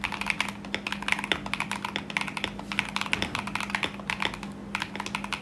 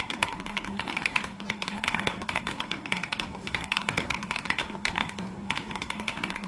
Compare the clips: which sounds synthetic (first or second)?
second